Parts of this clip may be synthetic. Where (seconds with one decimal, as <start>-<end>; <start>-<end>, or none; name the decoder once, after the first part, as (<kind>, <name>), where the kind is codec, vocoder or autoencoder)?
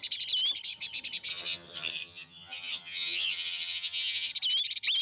1.3-4.3 (vocoder, HiFi-GAN)